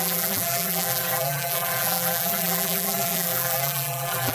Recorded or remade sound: remade